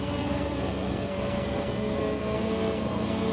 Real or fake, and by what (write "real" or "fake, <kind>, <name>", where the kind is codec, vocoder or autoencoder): fake, codec, SNAC